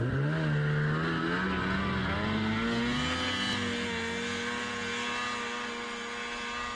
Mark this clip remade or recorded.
recorded